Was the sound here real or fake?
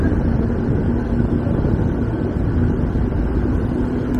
real